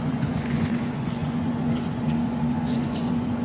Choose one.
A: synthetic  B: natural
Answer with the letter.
A